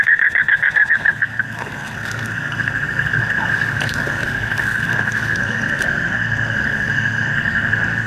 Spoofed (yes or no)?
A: yes